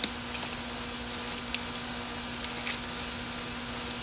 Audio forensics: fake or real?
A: real